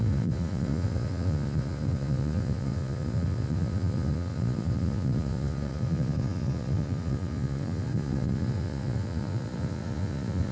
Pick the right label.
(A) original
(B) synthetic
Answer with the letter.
B